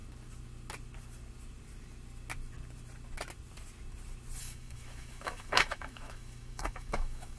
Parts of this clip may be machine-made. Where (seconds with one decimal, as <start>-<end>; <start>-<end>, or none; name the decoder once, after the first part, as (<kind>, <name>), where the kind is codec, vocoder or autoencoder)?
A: 4.4-7.4 (autoencoder, DAC-VAE)